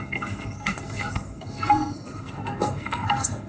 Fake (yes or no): yes